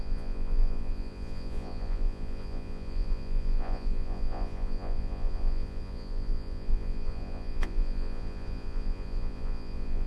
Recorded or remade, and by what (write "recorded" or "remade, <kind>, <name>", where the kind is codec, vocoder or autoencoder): remade, vocoder, Vocos